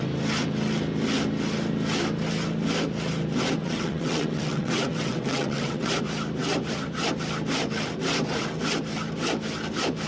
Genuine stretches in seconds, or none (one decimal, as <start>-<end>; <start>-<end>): 0.0-3.6; 5.9-10.1